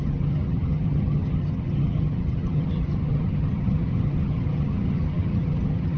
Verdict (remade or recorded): remade